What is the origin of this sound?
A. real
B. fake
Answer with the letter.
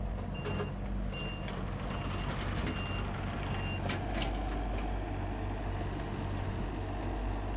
A